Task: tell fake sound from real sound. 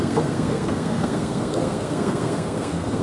fake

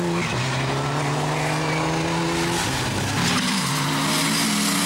real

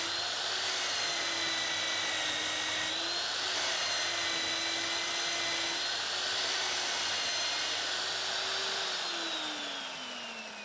real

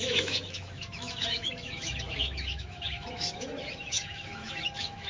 fake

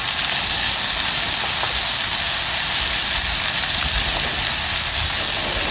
real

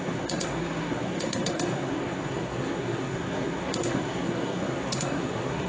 fake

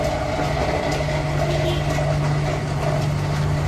real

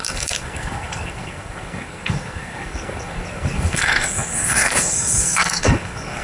fake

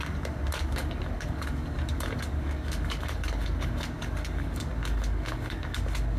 fake